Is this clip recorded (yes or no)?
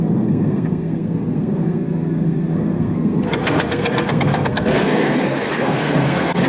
no